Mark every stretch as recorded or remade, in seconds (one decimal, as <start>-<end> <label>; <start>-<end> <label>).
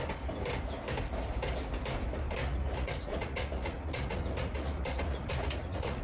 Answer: 0.0-2.4 recorded; 2.4-6.0 remade